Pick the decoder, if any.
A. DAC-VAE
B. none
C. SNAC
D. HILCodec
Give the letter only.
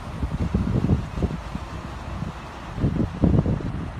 B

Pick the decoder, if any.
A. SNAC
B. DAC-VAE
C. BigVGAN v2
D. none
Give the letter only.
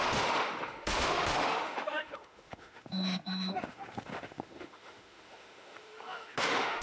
B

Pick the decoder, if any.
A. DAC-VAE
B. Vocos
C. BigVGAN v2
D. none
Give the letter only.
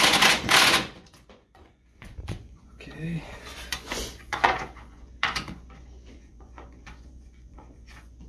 B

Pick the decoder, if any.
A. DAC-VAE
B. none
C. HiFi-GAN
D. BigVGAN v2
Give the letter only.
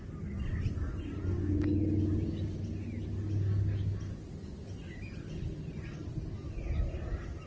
B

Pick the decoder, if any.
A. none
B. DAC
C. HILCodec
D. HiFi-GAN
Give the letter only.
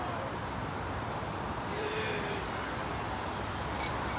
A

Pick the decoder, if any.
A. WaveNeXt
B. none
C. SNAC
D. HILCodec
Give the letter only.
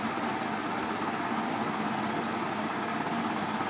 B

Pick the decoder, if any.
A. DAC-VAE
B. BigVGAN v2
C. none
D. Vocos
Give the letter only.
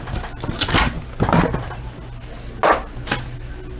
C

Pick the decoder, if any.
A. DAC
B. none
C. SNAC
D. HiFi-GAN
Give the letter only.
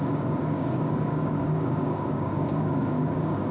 A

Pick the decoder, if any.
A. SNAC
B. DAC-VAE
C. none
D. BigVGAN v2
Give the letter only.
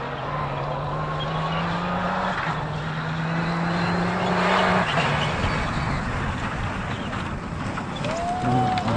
C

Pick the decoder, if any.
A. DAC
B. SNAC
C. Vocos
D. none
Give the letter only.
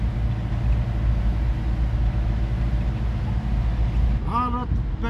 D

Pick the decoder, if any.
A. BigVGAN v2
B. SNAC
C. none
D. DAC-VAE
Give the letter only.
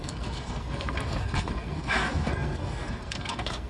B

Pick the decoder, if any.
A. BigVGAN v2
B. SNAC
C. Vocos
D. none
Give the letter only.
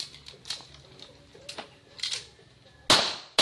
D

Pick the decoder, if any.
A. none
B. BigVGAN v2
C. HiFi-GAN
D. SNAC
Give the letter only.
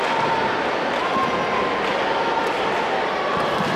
A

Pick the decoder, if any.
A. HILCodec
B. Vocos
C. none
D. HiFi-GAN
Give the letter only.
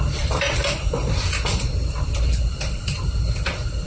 C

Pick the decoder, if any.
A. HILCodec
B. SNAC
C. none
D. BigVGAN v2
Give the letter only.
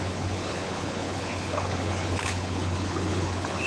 A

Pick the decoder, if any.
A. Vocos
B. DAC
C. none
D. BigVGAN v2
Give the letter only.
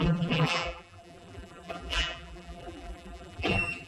D